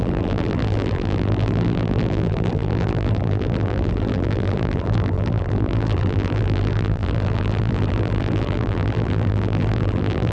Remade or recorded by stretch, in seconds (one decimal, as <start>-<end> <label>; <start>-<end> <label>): 0.0-10.3 remade